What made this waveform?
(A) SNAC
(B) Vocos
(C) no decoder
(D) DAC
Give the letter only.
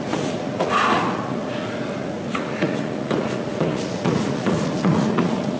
B